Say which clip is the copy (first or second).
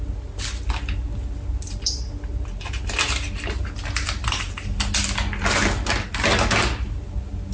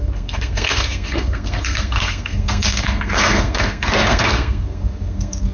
second